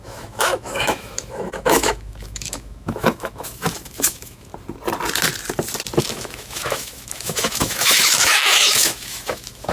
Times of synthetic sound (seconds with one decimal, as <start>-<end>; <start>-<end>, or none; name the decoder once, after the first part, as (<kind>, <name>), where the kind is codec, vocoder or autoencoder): 0.0-4.5 (autoencoder, DAC-VAE); 6.0-9.7